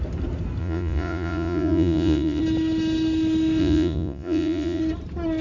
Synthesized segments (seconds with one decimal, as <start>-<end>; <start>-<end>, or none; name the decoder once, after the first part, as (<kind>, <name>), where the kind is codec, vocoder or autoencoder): 0.6-2.4 (vocoder, Vocos); 3.6-4.8